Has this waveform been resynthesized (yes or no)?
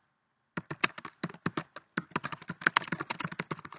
no